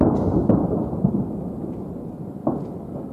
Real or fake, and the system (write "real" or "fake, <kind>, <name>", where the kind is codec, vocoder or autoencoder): real